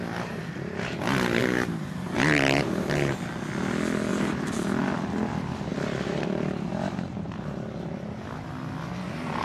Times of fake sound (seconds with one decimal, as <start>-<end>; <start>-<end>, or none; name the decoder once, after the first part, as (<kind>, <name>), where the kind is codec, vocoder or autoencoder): 1.4-3.2 (vocoder, BigVGAN v2); 4.1-4.8